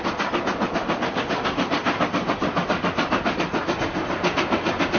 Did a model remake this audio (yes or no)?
no